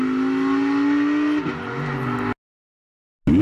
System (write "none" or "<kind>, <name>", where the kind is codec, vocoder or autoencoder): none